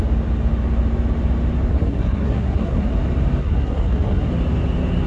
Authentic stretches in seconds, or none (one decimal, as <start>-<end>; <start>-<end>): 0.0-1.7; 2.9-3.4; 4.3-5.1